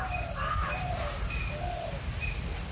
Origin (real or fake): real